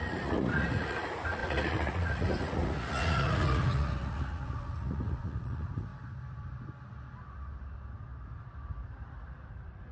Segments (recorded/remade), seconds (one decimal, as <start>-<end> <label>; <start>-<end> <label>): 0.0-5.9 remade; 5.9-9.5 recorded; 9.5-9.9 remade